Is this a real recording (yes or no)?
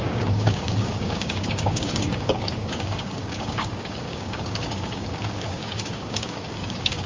no